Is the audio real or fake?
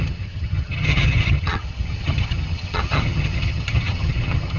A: fake